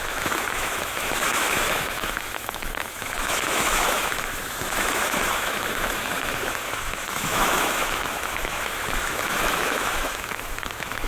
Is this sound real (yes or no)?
no